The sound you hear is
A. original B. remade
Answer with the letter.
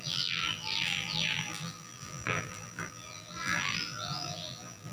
B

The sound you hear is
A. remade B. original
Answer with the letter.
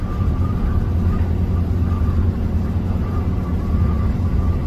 B